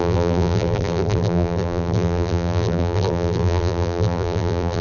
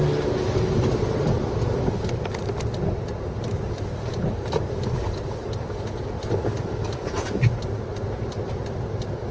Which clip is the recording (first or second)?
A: second